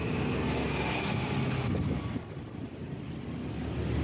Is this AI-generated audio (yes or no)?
no